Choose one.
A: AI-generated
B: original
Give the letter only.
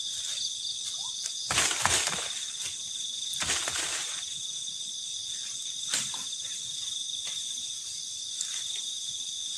B